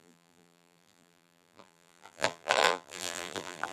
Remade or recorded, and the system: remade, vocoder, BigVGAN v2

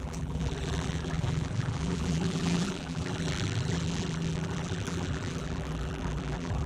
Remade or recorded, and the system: remade, vocoder, BigVGAN v2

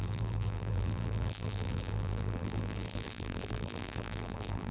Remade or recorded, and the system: remade, vocoder, BigVGAN v2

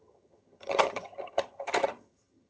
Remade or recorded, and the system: remade, vocoder, HiFi-GAN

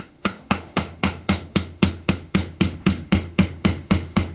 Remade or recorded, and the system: remade, autoencoder, DAC-VAE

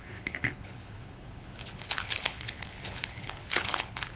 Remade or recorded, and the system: remade, codec, HILCodec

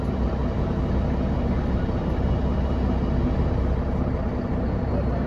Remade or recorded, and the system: recorded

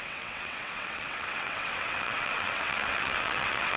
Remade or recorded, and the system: remade, vocoder, WaveNeXt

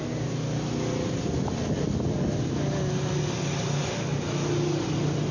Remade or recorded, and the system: recorded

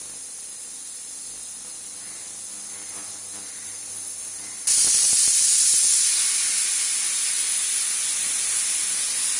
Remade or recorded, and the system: recorded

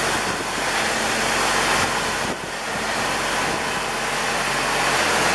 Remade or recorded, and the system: recorded